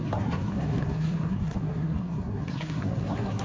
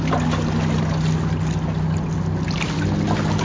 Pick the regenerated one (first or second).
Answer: first